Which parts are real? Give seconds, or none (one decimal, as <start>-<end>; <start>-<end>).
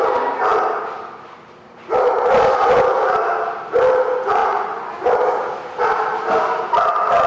0.0-4.4; 4.9-7.3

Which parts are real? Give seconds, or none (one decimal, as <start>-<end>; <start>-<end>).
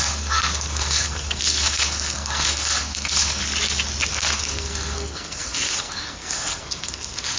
3.4-4.1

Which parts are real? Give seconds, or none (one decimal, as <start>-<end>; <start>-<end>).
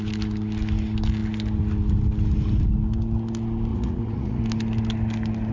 0.0-3.7; 4.4-5.5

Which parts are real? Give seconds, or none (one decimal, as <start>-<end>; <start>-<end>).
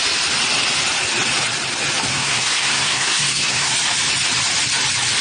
0.0-2.1; 3.7-5.2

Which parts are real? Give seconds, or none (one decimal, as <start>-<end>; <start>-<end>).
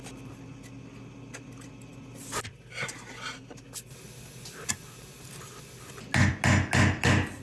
0.0-7.4